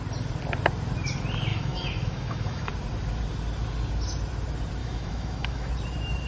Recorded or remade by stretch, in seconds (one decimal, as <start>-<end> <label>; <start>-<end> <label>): 0.0-1.5 recorded; 1.5-2.7 remade; 2.7-4.8 recorded; 4.8-5.7 remade; 5.7-6.3 recorded